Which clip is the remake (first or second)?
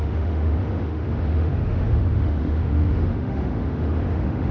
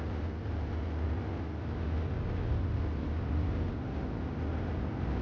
first